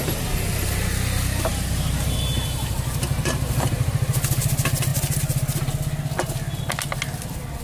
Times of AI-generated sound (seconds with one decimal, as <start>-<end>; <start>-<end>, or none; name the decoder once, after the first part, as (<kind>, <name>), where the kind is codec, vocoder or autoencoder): 1.5-3.9 (vocoder, BigVGAN v2)